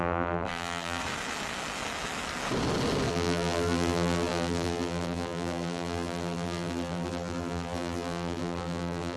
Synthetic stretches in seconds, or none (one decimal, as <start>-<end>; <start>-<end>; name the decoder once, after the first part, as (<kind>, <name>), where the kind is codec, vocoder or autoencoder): 0.0-1.0 (vocoder, BigVGAN v2); 3.1-9.2

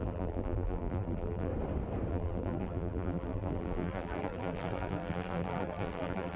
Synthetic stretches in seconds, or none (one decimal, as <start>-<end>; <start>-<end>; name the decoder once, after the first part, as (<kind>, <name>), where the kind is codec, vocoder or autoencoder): 0.0-1.5 (vocoder, BigVGAN v2); 2.1-6.4

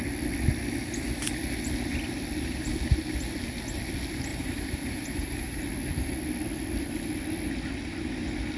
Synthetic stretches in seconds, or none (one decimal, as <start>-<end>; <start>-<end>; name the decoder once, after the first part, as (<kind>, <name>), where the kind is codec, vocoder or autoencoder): 4.3-5.6 (vocoder, BigVGAN v2)

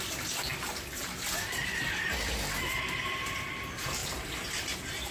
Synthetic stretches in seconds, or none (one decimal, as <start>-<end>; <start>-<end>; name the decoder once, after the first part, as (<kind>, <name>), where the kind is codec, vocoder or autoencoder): 4.0-4.5 (vocoder, BigVGAN v2)

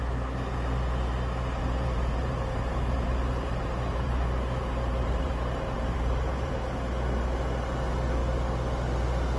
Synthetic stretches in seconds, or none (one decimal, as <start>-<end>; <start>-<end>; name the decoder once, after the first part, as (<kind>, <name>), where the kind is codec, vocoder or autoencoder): 1.6-6.5 (vocoder, BigVGAN v2)